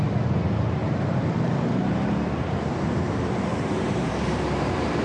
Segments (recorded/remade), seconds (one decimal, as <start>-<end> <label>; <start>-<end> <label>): 0.0-0.8 recorded; 0.8-3.1 remade; 3.1-3.5 recorded; 3.5-4.1 remade; 4.1-5.0 recorded